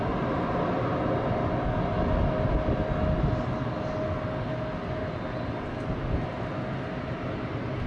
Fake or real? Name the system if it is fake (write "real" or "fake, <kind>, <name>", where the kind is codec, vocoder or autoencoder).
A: real